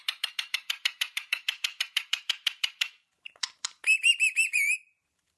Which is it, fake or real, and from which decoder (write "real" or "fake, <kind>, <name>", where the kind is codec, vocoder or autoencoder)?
fake, vocoder, BigVGAN v2